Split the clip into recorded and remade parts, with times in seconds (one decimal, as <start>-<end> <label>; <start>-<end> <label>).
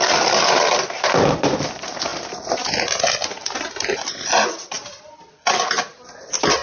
0.0-6.6 recorded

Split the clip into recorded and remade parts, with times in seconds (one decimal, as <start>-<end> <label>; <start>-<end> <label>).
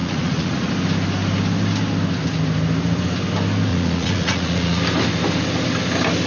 0.0-0.7 remade; 0.7-3.7 recorded; 3.7-4.8 remade; 4.8-6.3 recorded